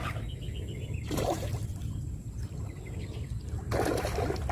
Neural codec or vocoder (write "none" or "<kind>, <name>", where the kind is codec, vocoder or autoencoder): none